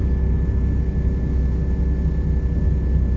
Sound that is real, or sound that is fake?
real